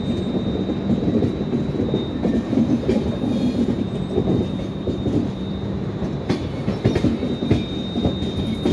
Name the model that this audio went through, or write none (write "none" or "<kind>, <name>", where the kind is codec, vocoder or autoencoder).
vocoder, BigVGAN v2